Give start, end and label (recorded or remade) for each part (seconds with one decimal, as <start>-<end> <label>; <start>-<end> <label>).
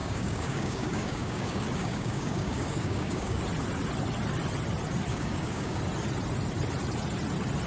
0.0-3.4 remade; 3.4-5.1 recorded; 5.1-5.8 remade; 5.8-7.7 recorded